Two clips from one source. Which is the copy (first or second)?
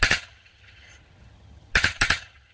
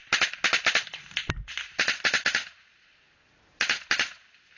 first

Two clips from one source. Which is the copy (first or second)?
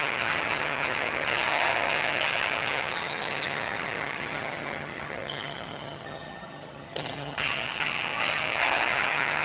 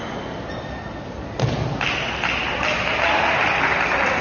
first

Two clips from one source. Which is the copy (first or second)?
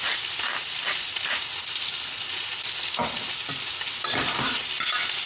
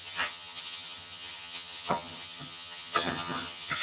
second